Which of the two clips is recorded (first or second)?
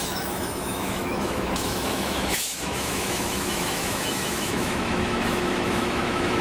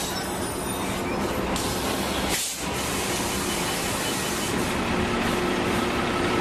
second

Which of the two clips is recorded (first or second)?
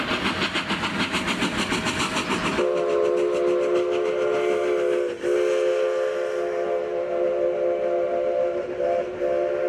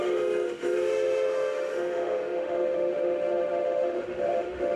first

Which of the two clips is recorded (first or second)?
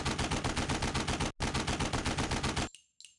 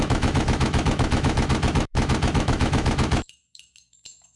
first